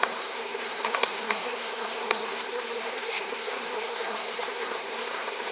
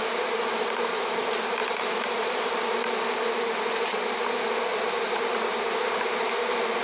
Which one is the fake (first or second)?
first